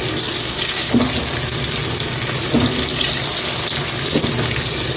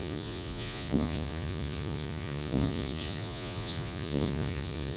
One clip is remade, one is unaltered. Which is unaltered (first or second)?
first